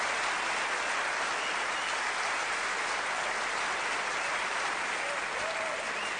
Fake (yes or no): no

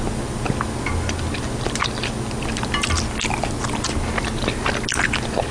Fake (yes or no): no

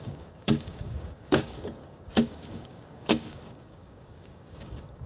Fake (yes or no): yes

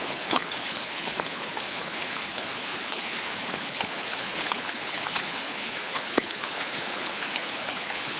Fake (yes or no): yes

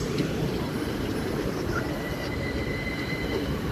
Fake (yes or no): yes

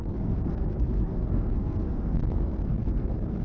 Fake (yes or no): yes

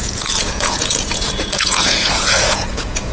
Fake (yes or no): yes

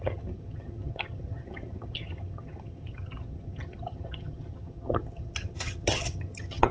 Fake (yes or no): yes